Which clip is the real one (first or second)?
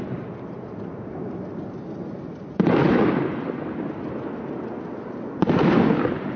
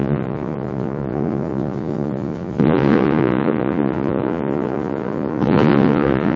first